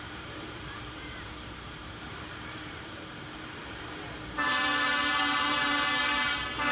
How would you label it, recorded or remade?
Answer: remade